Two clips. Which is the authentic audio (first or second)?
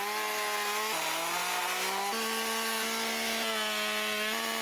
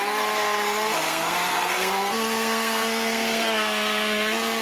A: first